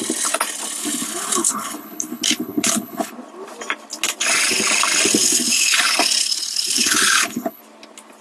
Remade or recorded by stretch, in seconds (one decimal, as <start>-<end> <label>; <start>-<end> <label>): 0.0-0.8 recorded; 0.8-3.1 remade; 3.1-5.2 recorded; 5.2-5.8 remade; 5.8-6.2 recorded; 6.2-7.6 remade; 7.6-8.2 recorded